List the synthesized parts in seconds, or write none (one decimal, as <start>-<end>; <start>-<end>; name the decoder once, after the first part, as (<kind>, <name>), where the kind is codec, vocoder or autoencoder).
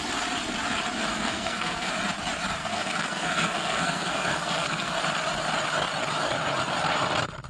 1.1-1.9 (codec, SNAC); 2.6-4.9